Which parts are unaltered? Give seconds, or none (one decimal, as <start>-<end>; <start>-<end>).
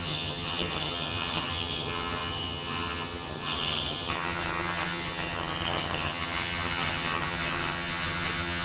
none